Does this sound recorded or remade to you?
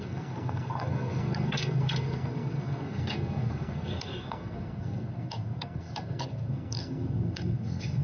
remade